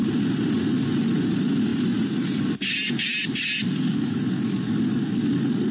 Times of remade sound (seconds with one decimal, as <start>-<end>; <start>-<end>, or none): none